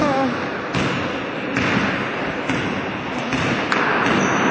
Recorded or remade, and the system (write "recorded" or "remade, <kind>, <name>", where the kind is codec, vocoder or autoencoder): recorded